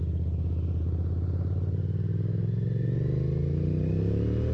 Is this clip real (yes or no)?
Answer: yes